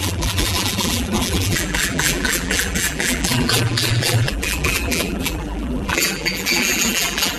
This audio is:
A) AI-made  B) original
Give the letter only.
A